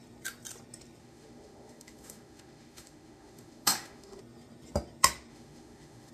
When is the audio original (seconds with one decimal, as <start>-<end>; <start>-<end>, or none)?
0.0-1.0; 4.2-5.3